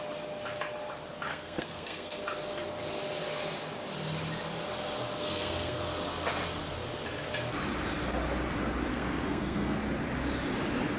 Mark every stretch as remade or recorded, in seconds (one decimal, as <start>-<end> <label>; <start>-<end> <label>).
0.0-1.3 recorded; 1.3-2.2 remade; 2.2-5.2 recorded; 5.2-5.8 remade; 5.8-8.9 recorded; 8.9-9.8 remade; 9.8-11.0 recorded